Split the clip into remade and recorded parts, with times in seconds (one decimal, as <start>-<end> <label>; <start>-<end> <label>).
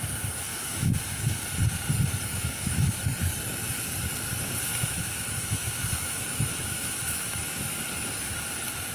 0.0-0.5 recorded; 0.5-1.4 remade; 1.4-2.3 recorded; 2.3-3.0 remade; 3.0-4.7 recorded; 4.7-7.7 remade; 7.7-8.9 recorded